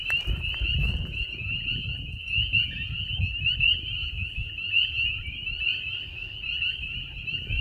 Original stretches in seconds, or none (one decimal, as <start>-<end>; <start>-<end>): 0.0-0.8; 2.9-4.0; 5.2-7.6

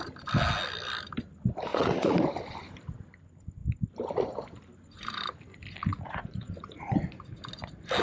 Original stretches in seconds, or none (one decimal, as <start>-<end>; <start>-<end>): 0.0-1.7; 2.2-5.9; 6.8-8.0

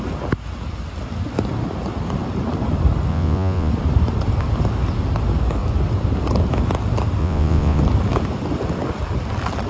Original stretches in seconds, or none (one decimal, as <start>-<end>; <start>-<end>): 0.0-3.1; 3.7-7.2; 7.8-9.7

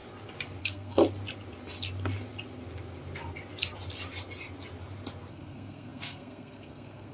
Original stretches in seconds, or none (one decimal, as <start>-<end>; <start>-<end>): 0.0-0.6; 1.0-5.3

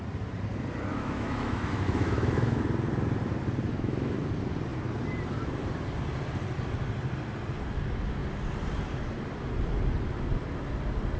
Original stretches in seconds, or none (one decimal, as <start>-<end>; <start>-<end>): 0.0-0.9; 2.6-3.7; 4.2-11.2